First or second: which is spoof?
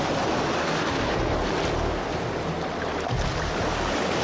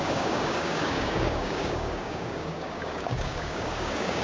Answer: second